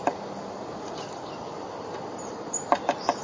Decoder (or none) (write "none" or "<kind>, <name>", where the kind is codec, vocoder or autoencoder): vocoder, BigVGAN v2